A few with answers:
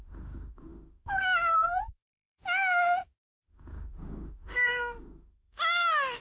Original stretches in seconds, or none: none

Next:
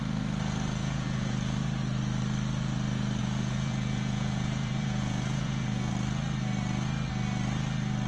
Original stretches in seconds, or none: 0.0-0.8; 1.6-3.2; 5.9-8.1